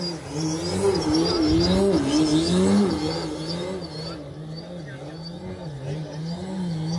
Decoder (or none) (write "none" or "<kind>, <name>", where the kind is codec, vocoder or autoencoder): none